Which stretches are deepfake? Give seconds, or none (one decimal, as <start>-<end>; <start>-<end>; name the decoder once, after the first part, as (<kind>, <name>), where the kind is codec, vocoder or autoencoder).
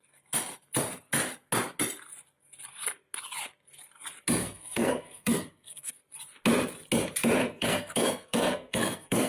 4.4-5.9 (codec, SNAC); 7.4-9.3